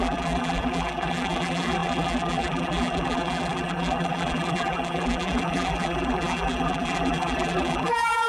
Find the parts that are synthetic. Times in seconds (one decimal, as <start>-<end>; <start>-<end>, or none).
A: 0.0-8.3